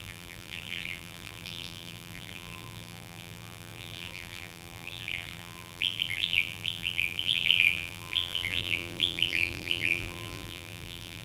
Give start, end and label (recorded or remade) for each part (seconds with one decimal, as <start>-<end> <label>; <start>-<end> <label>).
0.0-11.2 remade